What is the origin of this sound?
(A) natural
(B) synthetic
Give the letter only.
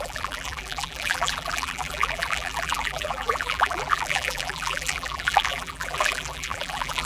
B